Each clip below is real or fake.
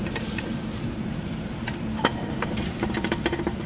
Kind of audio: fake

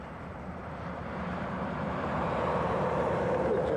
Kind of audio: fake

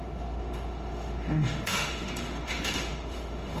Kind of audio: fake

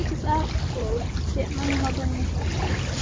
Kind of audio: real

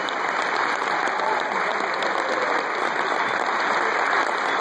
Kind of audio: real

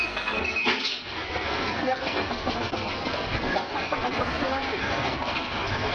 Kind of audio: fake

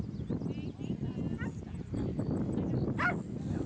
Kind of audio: real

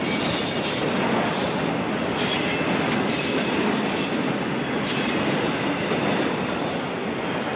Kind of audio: real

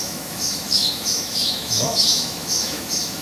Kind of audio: fake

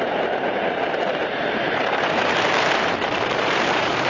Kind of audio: fake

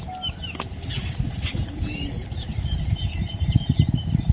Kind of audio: real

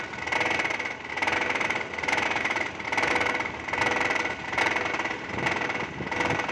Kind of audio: real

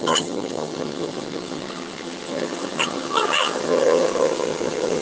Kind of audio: fake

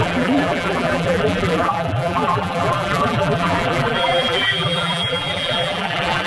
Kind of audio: fake